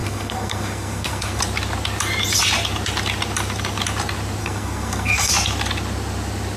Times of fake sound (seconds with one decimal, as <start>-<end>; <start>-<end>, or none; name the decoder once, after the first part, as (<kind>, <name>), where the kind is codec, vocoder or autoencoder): 0.0-1.4 (codec, SNAC); 4.4-5.3